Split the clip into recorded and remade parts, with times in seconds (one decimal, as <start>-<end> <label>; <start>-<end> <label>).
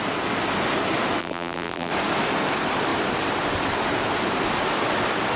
0.0-1.2 recorded; 1.2-1.9 remade; 1.9-5.4 recorded